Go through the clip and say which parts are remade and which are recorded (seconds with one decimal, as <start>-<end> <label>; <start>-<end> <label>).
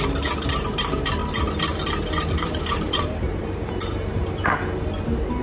0.0-1.2 remade; 1.2-2.3 recorded; 2.3-4.2 remade; 4.2-5.4 recorded